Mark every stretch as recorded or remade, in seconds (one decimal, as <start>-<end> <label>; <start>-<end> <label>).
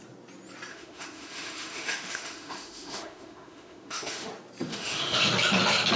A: 0.0-0.7 recorded; 0.7-4.3 remade; 4.3-4.7 recorded; 4.7-5.3 remade; 5.3-6.0 recorded